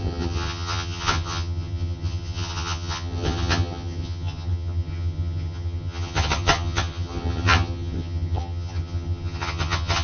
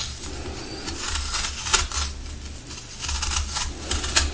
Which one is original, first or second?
second